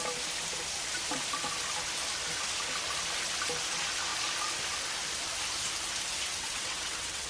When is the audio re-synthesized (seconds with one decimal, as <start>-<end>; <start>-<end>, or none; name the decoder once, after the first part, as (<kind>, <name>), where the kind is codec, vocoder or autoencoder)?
6.3-7.3 (vocoder, WaveNeXt)